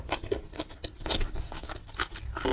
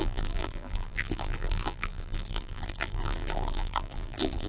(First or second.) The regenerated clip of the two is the second